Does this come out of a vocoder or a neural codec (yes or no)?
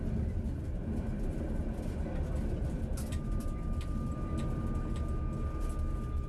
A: no